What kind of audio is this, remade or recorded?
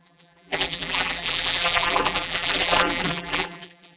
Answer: remade